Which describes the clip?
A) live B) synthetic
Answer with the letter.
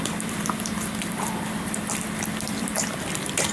B